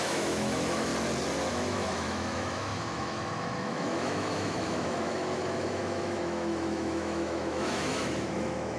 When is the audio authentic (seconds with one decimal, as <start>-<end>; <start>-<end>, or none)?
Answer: 0.9-1.5